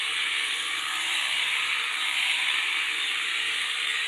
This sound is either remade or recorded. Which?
remade